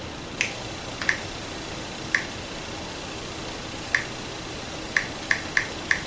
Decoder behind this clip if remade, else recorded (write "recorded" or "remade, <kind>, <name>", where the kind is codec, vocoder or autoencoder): recorded